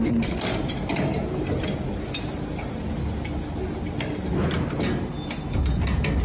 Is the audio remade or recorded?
recorded